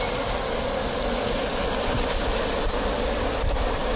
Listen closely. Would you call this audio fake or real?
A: real